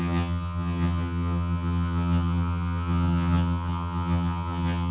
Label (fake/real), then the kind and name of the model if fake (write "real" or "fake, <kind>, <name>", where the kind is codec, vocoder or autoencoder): fake, vocoder, HiFi-GAN